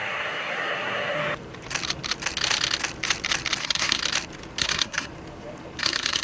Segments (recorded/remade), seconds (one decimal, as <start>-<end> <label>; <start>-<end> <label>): 0.0-1.2 remade; 1.2-3.6 recorded; 3.6-4.0 remade; 4.0-4.6 recorded; 4.6-5.1 remade; 5.1-5.8 recorded; 5.8-6.2 remade